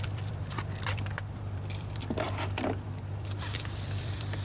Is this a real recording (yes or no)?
no